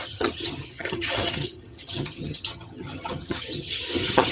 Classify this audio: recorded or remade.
remade